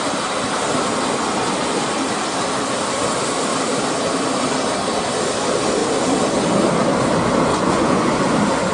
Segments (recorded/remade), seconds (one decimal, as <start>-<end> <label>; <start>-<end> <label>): 0.0-7.5 recorded; 7.5-8.1 remade; 8.1-8.7 recorded